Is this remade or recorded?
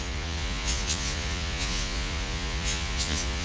remade